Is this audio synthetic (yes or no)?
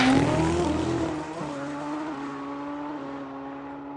no